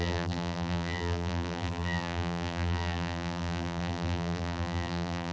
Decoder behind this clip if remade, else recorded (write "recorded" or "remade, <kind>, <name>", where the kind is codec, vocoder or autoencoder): remade, vocoder, BigVGAN v2